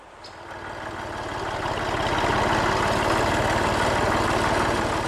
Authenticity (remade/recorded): recorded